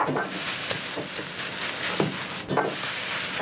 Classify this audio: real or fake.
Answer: real